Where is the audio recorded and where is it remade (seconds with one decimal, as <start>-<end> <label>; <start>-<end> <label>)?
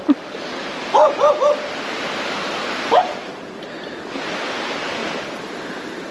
0.0-0.6 remade; 0.6-2.7 recorded; 2.7-3.3 remade; 3.3-4.1 recorded; 4.1-5.0 remade; 5.0-6.1 recorded